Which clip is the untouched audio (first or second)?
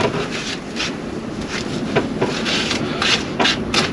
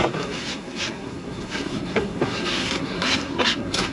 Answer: first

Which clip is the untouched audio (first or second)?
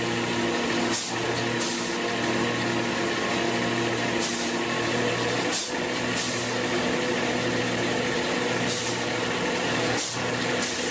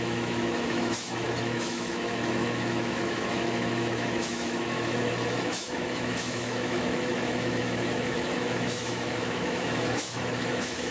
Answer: first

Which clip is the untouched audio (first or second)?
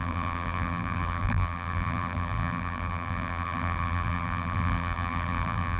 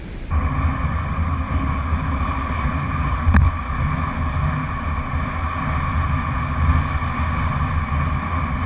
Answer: second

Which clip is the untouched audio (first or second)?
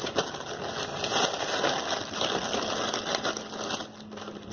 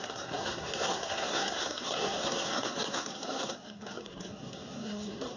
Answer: first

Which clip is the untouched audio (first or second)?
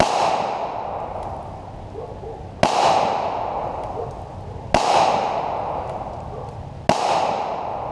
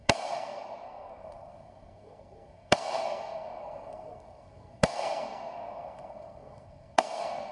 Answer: first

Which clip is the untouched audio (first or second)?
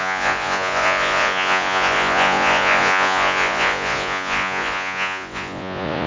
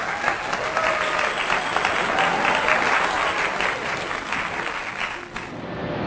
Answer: second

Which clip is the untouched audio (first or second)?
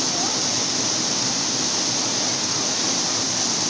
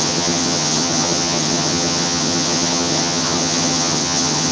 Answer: first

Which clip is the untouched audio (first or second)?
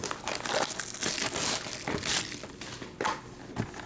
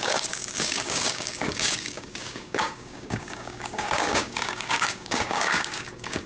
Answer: first